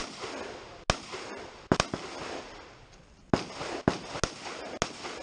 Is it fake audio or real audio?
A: real